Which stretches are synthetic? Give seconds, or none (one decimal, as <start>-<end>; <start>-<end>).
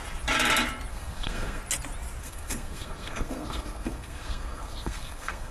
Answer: 0.9-1.6; 2.2-5.5